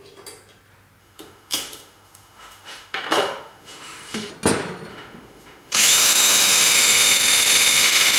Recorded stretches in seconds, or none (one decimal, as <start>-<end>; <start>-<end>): 0.0-1.0; 4.3-4.9